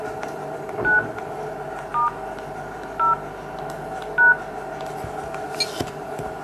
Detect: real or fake real